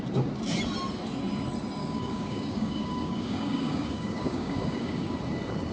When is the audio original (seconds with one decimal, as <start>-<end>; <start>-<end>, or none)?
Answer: 0.0-1.8; 5.2-5.7